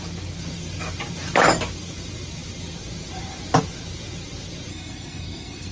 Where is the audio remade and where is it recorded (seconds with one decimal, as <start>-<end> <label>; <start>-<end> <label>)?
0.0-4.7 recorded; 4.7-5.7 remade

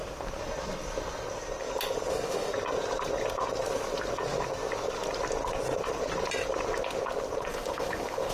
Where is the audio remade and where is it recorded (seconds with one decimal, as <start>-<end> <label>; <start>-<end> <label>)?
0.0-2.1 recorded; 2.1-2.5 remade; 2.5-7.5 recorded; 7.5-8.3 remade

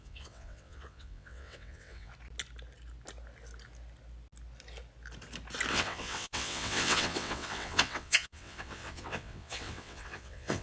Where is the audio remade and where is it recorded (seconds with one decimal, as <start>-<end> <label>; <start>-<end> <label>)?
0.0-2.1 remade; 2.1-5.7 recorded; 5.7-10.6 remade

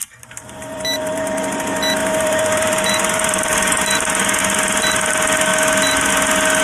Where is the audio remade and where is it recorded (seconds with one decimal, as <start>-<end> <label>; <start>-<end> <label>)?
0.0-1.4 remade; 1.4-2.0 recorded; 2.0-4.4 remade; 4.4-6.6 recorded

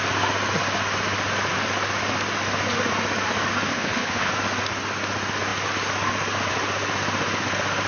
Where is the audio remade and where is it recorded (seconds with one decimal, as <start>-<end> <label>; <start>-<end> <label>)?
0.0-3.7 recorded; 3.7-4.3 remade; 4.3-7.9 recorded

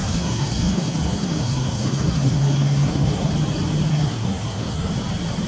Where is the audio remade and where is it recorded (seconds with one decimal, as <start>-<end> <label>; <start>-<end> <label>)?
0.0-3.3 remade; 3.3-3.9 recorded; 3.9-4.9 remade; 4.9-5.5 recorded

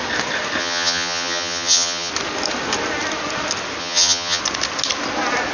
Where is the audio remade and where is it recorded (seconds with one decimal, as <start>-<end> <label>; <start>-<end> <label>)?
0.0-0.6 recorded; 0.6-2.1 remade; 2.1-3.8 recorded; 3.8-4.4 remade; 4.4-5.5 recorded